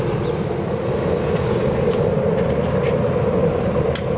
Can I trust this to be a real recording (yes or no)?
yes